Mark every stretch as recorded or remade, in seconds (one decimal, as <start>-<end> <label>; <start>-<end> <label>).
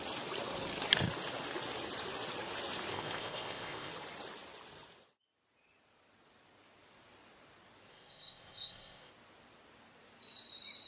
0.0-2.9 recorded; 2.9-3.9 remade; 3.9-7.9 recorded; 7.9-9.1 remade; 9.1-10.9 recorded